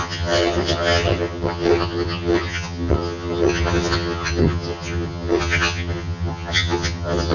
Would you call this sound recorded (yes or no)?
no